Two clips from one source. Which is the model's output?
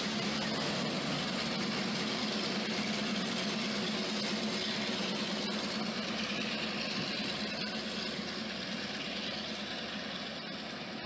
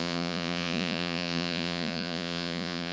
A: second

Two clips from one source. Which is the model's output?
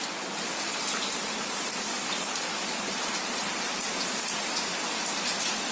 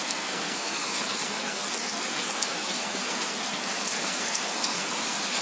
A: second